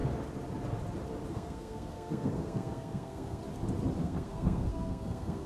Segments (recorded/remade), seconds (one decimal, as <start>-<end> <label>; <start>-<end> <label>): 0.0-1.3 recorded; 1.3-3.4 remade; 3.4-4.0 recorded; 4.0-5.5 remade